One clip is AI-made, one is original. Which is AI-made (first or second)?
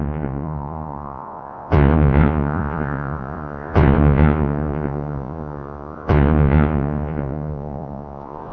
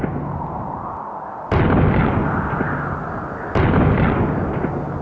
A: first